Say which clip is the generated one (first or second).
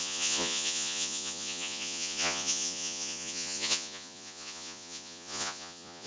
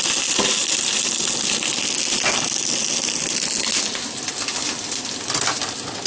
first